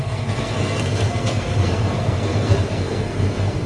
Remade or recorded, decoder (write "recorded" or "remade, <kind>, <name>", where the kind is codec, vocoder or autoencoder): remade, codec, SNAC